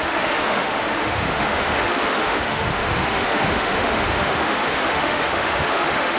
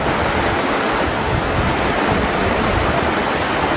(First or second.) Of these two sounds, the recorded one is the second